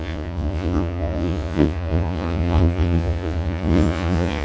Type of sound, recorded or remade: remade